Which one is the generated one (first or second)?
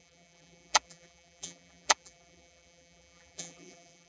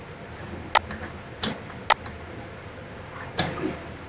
first